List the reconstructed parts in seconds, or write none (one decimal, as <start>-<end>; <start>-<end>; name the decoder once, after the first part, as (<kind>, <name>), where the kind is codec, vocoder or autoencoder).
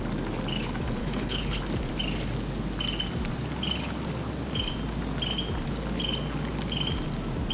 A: 1.0-1.6 (codec, HILCodec)